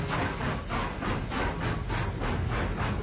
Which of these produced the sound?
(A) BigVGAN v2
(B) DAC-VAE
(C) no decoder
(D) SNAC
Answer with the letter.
C